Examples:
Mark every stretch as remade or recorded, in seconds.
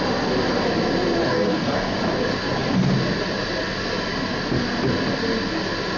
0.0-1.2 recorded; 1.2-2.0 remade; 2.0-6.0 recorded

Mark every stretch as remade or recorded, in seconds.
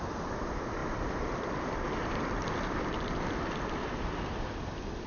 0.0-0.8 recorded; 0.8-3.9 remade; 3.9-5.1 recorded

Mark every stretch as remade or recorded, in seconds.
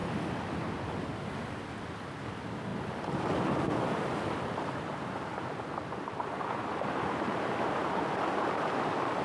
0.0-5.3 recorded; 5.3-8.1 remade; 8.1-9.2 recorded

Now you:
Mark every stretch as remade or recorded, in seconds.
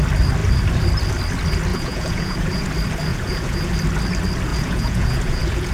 0.0-1.7 recorded; 1.7-2.7 remade; 2.7-3.1 recorded; 3.1-3.7 remade; 3.7-4.5 recorded; 4.5-5.7 remade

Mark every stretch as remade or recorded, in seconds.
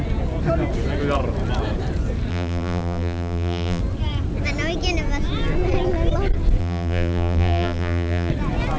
0.0-2.3 recorded; 2.3-3.8 remade; 3.8-6.6 recorded; 6.6-8.3 remade; 8.3-8.8 recorded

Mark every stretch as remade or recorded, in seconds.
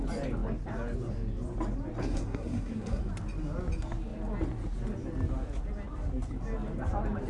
0.0-2.0 recorded; 2.0-3.0 remade; 3.0-7.3 recorded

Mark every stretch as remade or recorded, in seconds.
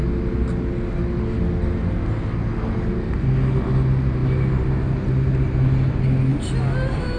0.0-7.2 recorded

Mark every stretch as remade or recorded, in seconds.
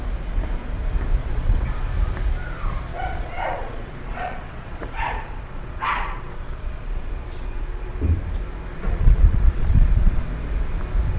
0.0-1.2 recorded; 1.2-1.8 remade; 1.8-2.9 recorded; 2.9-7.9 remade; 7.9-8.7 recorded; 8.7-10.2 remade; 10.2-11.2 recorded